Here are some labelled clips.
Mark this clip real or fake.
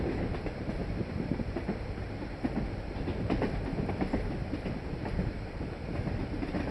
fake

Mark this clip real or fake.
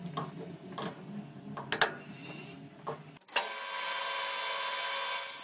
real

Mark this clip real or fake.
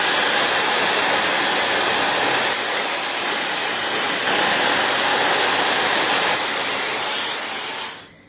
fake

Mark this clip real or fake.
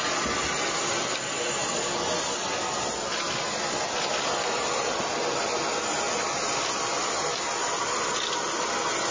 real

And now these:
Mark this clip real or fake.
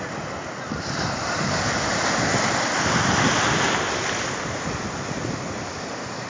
real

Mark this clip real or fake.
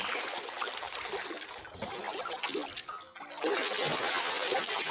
real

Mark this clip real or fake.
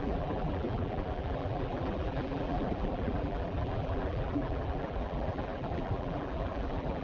fake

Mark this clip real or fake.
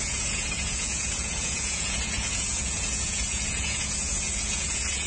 fake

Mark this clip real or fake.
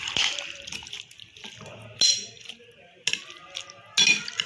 real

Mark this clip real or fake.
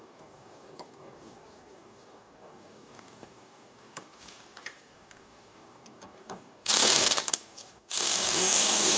fake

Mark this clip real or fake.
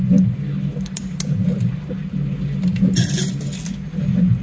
real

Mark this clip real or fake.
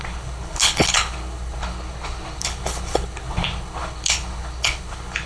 fake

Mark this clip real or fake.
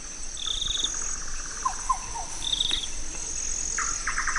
real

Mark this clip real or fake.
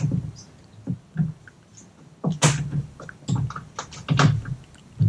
real